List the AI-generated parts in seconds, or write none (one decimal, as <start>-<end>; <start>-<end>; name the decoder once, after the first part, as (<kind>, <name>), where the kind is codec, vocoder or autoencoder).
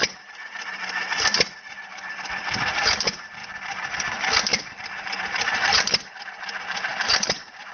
none